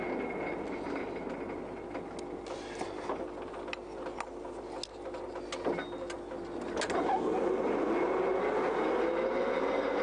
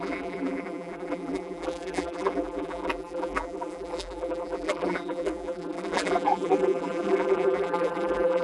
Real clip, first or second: first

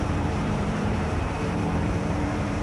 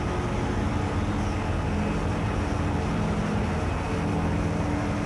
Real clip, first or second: second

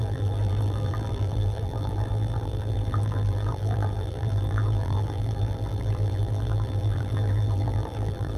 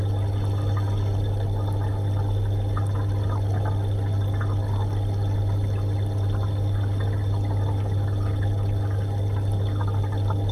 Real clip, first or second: second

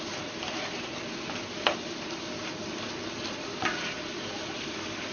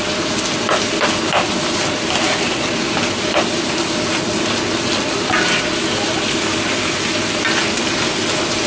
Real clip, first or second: second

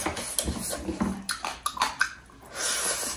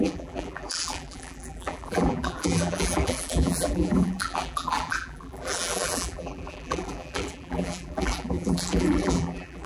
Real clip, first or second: first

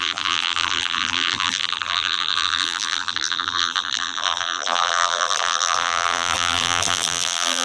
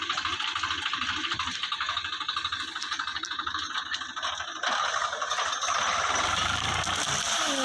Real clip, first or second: second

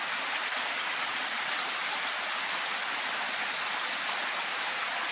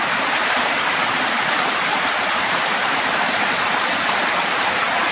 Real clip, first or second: first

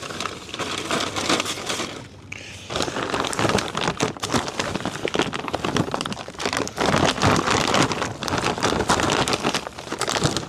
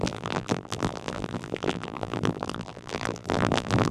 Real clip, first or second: first